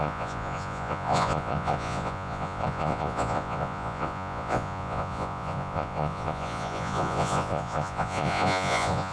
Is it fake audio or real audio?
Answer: fake